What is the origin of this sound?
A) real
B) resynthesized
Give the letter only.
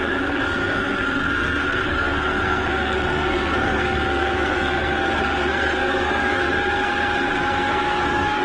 B